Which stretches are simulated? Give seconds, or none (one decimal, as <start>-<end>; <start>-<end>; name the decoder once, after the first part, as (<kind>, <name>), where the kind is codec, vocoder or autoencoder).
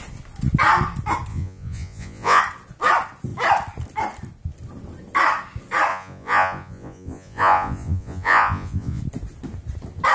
1.3-2.4 (vocoder, Vocos); 5.9-9.0